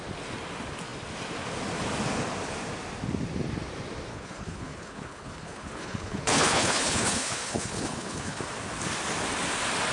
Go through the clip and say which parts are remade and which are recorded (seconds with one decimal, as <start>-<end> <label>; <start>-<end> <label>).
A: 0.0-4.1 recorded; 4.1-8.4 remade; 8.4-9.9 recorded